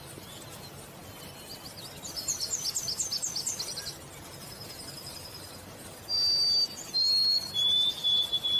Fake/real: real